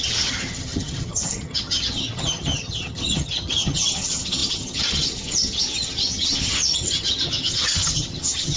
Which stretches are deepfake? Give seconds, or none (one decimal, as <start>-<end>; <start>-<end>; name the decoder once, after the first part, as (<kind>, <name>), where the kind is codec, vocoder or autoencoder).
0.0-8.6 (vocoder, HiFi-GAN)